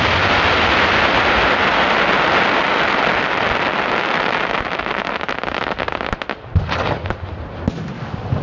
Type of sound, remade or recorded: recorded